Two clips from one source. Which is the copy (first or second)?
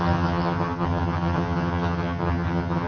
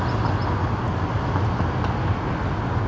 first